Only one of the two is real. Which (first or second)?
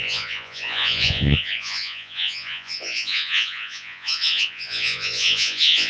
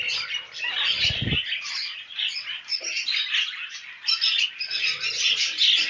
second